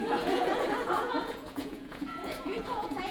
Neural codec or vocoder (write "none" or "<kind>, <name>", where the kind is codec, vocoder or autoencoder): vocoder, Vocos